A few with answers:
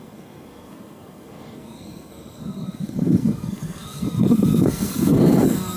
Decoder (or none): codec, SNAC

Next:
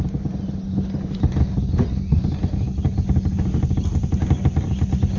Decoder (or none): none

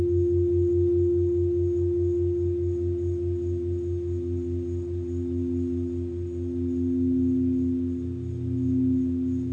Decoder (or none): none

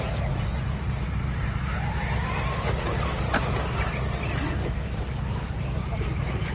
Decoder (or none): none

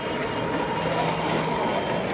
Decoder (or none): none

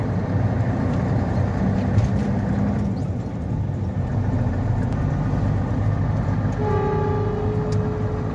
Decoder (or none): none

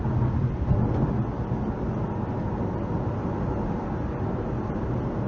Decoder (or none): none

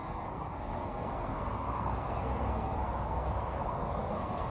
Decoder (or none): codec, SNAC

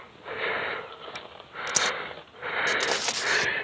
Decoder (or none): none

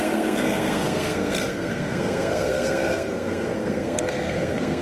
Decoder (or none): codec, SNAC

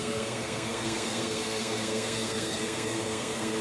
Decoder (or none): codec, SNAC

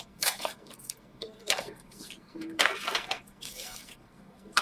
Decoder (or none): codec, SNAC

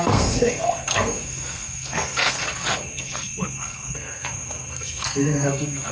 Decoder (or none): codec, SNAC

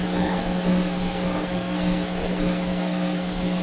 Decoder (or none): codec, SNAC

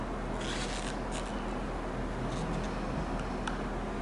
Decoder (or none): none